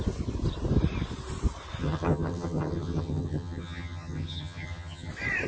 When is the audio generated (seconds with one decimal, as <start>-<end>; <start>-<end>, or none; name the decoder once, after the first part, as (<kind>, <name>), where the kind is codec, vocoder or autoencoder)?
1.8-5.1 (vocoder, HiFi-GAN)